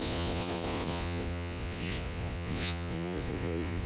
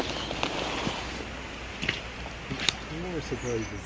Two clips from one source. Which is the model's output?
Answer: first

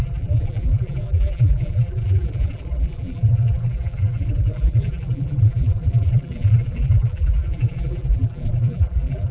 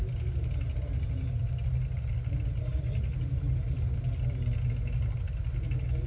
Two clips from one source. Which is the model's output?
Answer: first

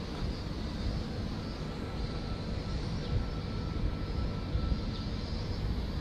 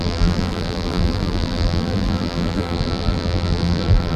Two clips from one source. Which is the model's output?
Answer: second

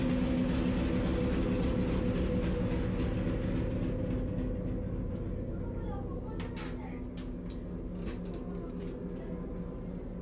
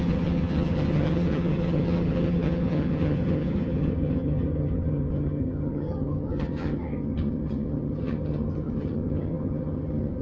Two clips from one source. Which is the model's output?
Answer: second